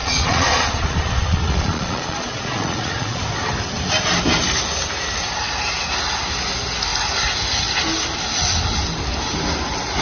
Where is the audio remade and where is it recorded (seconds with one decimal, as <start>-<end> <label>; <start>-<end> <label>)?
0.0-3.2 remade; 3.2-10.0 recorded

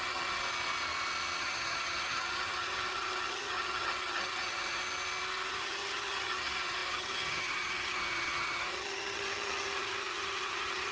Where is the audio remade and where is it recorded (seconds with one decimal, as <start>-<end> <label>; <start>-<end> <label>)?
0.0-0.4 remade; 0.4-1.4 recorded; 1.4-4.8 remade; 4.8-5.5 recorded; 5.5-10.9 remade

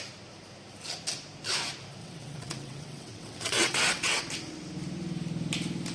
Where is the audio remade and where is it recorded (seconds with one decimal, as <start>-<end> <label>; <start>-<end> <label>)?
0.0-2.0 recorded; 2.0-4.2 remade; 4.2-5.9 recorded

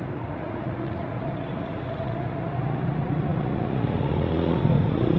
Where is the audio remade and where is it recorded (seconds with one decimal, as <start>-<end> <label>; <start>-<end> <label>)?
0.0-5.2 remade

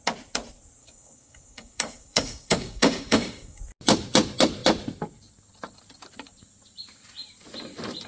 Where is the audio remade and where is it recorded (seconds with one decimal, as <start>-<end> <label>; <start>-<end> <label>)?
0.0-0.8 recorded; 0.8-3.6 remade; 3.6-8.1 recorded

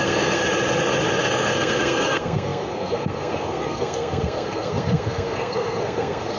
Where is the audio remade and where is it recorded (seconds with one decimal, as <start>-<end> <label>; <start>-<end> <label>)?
0.0-0.4 remade; 0.4-1.2 recorded; 1.2-6.4 remade

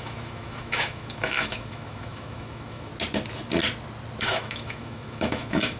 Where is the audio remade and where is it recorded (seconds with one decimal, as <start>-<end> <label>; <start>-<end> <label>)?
0.0-2.9 remade; 2.9-4.2 recorded; 4.2-5.8 remade